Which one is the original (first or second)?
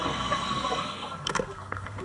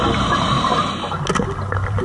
second